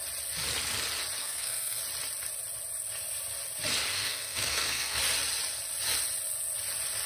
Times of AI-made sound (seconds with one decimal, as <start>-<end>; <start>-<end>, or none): 1.2-1.8; 3.9-5.0